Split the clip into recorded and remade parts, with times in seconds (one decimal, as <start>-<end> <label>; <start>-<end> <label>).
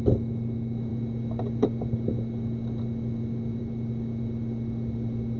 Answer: 0.0-5.4 recorded